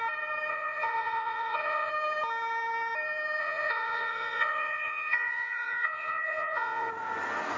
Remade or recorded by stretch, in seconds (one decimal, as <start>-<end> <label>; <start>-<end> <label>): 0.0-0.5 recorded; 0.5-1.9 remade; 1.9-3.4 recorded; 3.4-6.9 remade; 6.9-7.6 recorded